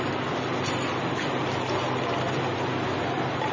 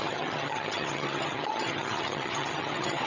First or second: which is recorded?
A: first